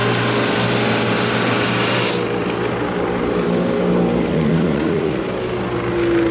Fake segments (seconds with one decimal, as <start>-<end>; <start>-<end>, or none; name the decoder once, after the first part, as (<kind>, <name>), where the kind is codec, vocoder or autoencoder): 4.3-5.2 (vocoder, Vocos)

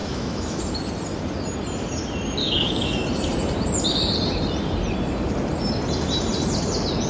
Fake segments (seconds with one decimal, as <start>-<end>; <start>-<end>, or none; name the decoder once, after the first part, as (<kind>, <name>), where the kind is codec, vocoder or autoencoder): 0.0-0.6 (autoencoder, DAC-VAE); 2.4-2.9

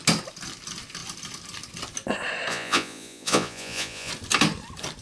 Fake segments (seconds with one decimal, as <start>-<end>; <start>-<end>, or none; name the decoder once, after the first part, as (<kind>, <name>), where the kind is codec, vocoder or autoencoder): 2.5-4.1 (vocoder, Vocos)

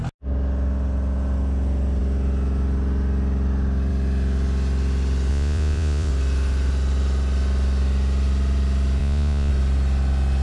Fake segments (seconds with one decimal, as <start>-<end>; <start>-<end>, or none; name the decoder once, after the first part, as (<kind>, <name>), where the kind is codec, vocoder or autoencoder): 5.3-6.1 (vocoder, Vocos); 9.0-9.5

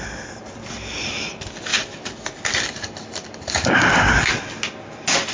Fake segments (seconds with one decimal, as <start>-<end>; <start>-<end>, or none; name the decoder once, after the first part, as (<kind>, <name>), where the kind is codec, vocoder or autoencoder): 1.7-4.3 (vocoder, BigVGAN v2)

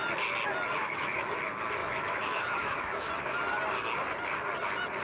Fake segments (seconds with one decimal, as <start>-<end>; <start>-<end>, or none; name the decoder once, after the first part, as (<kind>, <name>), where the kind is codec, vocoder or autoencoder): 0.8-1.4 (autoencoder, DAC-VAE); 1.8-3.1

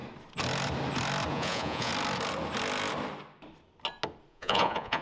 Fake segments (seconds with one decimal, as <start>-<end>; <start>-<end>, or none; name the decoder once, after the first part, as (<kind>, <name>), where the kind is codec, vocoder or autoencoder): 1.3-1.9 (vocoder, Vocos); 4.3-5.0